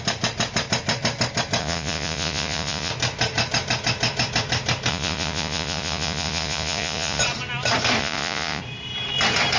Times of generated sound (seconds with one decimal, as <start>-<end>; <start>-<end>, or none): 1.6-2.9; 4.9-7.2; 8.0-8.6